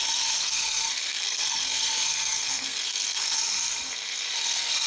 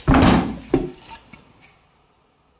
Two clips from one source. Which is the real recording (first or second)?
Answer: second